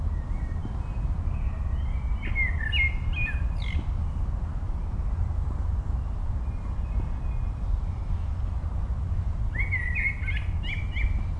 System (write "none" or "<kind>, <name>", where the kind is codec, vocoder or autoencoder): none